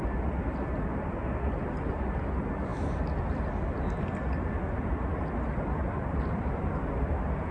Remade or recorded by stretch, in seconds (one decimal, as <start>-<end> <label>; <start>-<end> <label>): 0.0-7.5 recorded